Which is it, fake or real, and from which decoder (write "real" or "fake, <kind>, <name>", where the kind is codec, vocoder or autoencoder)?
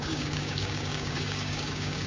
fake, codec, DAC